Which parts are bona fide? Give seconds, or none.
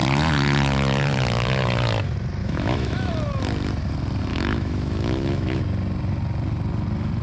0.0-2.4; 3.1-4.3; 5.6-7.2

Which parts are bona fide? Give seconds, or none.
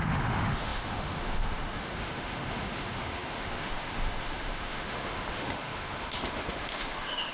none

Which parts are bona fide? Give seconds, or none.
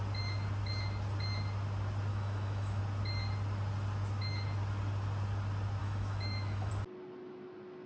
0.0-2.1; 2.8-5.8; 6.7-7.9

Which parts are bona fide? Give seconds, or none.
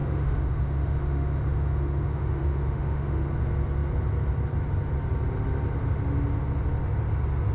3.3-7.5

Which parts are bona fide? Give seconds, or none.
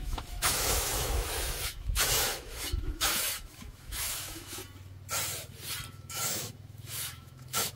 4.6-5.9